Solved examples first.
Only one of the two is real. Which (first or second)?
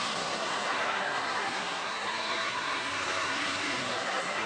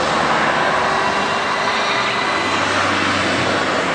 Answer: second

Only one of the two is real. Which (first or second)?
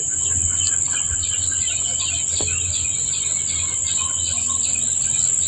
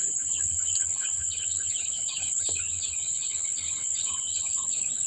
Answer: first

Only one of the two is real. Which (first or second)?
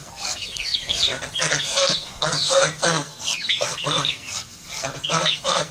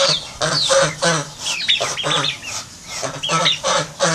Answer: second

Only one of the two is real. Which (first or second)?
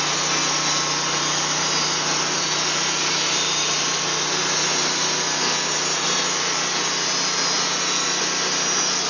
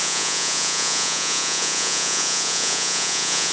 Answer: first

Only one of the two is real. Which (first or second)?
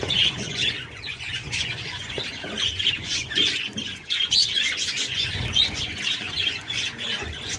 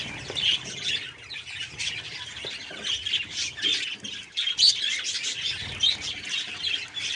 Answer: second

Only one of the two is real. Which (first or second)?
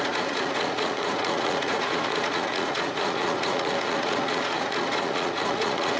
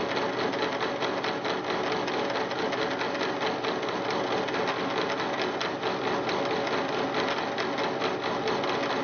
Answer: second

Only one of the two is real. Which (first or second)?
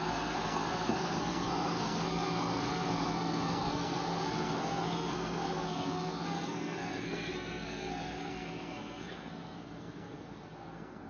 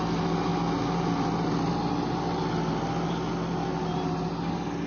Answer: second